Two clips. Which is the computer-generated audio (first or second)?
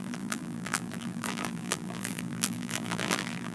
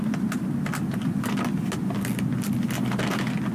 first